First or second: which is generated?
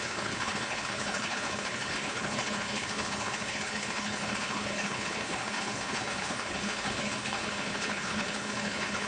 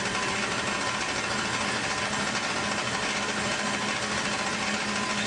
first